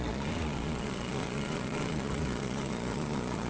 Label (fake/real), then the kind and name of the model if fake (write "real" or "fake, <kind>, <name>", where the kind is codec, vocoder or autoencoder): fake, vocoder, Vocos